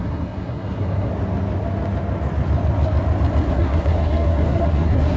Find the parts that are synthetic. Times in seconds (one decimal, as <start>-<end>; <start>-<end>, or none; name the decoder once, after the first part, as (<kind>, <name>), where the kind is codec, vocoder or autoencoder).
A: 0.0-1.1 (codec, SNAC); 3.5-5.2